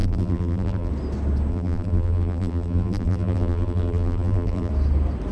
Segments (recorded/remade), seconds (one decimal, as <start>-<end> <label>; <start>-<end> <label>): 0.0-0.9 remade; 0.9-1.5 recorded; 1.5-4.7 remade; 4.7-5.3 recorded